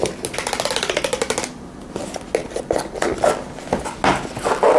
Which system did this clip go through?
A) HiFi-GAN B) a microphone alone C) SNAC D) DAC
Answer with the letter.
B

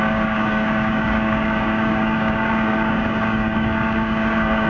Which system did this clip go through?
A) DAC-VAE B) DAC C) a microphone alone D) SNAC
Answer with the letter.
B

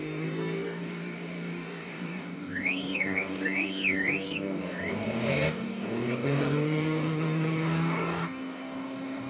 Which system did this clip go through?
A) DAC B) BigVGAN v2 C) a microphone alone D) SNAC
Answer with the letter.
A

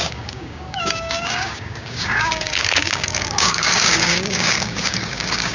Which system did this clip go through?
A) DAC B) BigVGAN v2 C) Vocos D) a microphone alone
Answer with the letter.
A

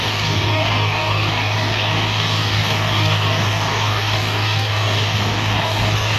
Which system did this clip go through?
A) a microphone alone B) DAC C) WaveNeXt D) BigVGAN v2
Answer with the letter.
B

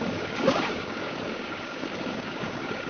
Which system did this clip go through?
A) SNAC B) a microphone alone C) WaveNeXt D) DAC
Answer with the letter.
D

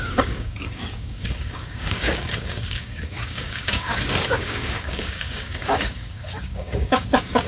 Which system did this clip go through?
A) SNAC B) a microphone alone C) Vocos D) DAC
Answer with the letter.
D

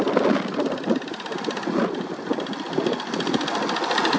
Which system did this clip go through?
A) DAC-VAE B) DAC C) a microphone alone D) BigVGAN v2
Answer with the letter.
C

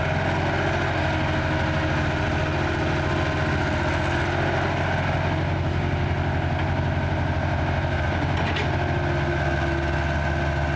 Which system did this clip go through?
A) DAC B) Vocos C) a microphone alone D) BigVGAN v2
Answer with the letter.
C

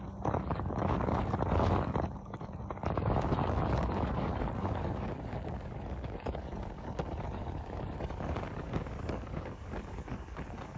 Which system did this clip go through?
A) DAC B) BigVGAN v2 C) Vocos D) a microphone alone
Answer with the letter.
A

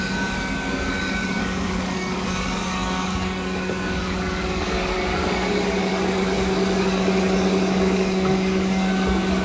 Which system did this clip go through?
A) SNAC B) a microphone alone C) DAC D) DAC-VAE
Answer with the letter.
C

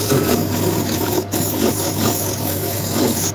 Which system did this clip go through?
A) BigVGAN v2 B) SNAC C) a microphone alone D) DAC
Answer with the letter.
D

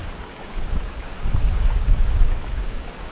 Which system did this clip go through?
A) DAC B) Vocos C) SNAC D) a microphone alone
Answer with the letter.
A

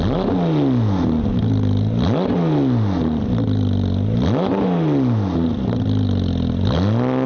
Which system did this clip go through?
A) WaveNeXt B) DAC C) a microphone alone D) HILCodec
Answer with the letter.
C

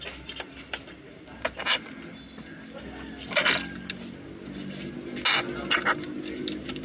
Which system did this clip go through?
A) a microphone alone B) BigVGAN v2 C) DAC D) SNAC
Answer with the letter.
A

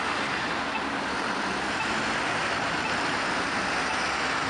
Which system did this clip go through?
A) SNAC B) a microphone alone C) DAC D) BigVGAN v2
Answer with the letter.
B